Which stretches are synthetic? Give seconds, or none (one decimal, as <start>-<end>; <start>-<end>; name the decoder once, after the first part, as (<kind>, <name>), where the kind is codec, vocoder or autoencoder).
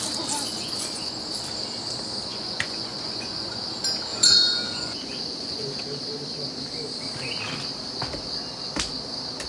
0.5-1.3 (vocoder, Vocos); 2.3-3.6; 4.1-5.8